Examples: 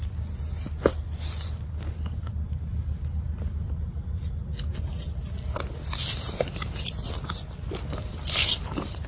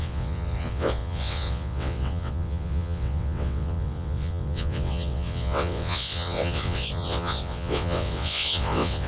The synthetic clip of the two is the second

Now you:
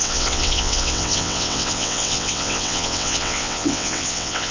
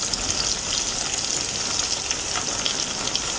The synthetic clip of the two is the first